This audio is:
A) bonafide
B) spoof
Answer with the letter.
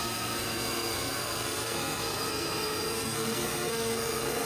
B